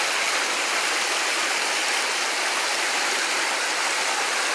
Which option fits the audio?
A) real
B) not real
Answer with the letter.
A